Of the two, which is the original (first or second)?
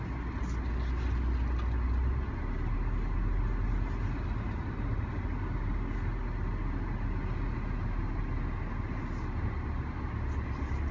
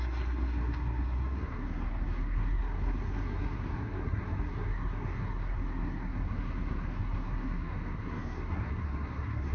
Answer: first